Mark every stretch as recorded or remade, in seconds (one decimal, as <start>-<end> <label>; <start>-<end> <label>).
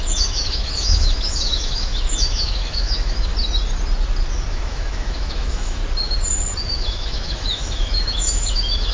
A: 0.0-3.3 remade; 3.3-4.5 recorded; 4.5-5.8 remade; 5.8-6.6 recorded; 6.6-8.9 remade